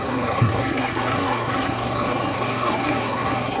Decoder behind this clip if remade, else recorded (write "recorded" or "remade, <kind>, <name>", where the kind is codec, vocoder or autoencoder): remade, codec, SNAC